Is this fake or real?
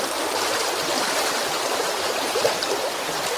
fake